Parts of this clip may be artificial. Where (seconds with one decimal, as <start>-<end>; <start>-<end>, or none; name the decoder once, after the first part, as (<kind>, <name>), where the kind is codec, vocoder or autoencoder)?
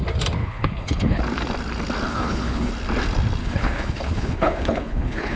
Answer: 0.4-1.2 (codec, HILCodec); 2.1-2.7; 3.4-5.4